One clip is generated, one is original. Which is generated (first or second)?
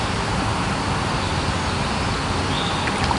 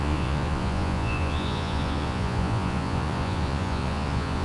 second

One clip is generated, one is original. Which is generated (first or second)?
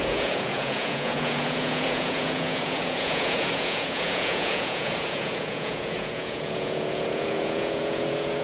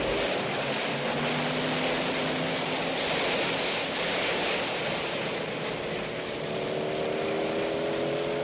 first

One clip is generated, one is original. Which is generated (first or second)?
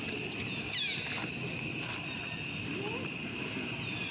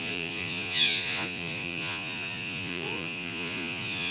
second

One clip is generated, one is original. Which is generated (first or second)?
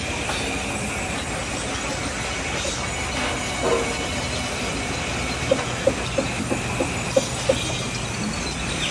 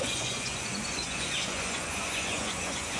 second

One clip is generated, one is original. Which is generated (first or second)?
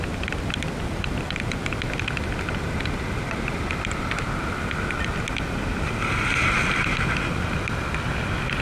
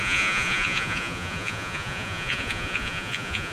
second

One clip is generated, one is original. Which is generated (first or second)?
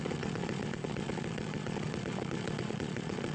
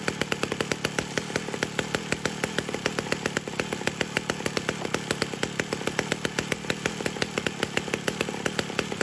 first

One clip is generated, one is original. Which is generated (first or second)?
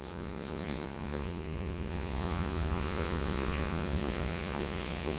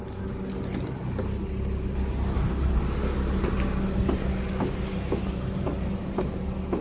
first